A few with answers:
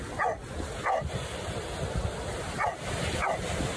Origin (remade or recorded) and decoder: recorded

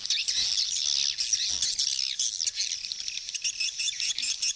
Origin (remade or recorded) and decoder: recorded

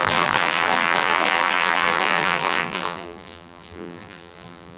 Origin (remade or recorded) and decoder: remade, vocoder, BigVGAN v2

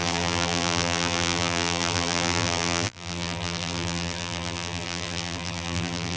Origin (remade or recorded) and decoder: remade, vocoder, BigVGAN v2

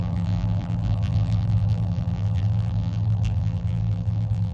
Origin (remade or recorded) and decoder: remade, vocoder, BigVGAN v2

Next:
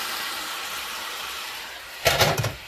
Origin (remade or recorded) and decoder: remade, vocoder, BigVGAN v2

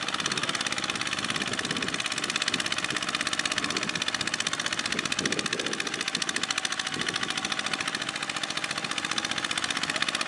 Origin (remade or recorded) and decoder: recorded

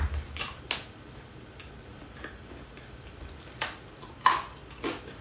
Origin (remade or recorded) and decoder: recorded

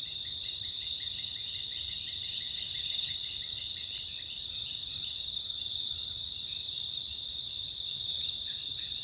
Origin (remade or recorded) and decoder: remade, vocoder, BigVGAN v2